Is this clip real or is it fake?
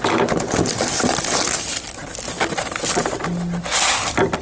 real